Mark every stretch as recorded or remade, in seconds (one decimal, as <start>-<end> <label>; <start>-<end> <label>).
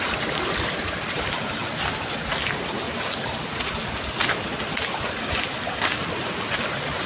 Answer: 0.0-7.1 recorded